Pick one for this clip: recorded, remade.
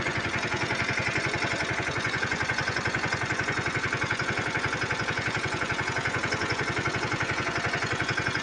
remade